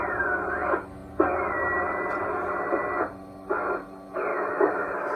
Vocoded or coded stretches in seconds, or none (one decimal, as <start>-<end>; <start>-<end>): 4.3-5.2